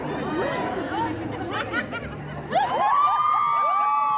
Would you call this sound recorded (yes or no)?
yes